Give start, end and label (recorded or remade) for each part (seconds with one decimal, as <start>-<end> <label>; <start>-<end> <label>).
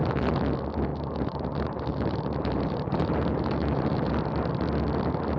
0.0-0.9 recorded; 0.9-4.1 remade; 4.1-5.4 recorded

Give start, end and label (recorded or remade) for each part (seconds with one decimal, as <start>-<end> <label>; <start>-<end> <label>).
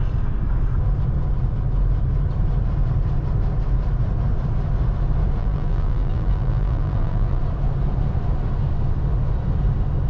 0.0-5.4 recorded; 5.4-7.4 remade; 7.4-10.1 recorded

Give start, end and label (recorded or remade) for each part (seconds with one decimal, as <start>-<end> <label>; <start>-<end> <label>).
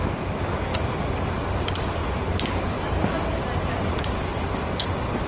0.0-5.3 recorded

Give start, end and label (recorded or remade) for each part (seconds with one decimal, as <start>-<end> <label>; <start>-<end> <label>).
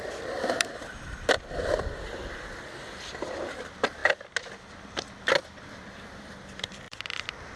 0.0-4.0 remade; 4.0-5.2 recorded; 5.2-7.6 remade